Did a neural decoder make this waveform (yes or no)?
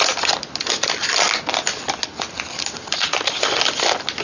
no